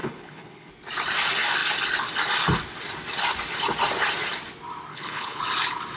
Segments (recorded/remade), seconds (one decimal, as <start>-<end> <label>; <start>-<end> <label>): 0.0-0.7 remade; 0.7-4.9 recorded; 4.9-5.4 remade; 5.4-6.0 recorded